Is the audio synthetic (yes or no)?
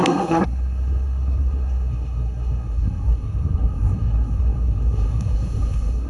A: yes